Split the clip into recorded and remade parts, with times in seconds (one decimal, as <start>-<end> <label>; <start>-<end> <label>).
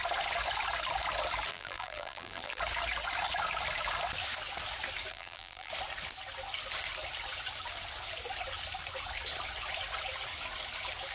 0.0-1.5 recorded; 1.5-2.6 remade; 2.6-5.1 recorded; 5.1-5.7 remade; 5.7-11.1 recorded